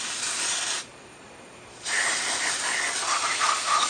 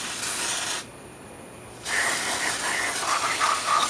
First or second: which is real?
second